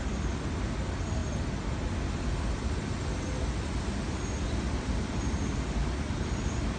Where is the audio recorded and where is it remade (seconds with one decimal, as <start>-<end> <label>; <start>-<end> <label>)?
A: 0.0-6.8 recorded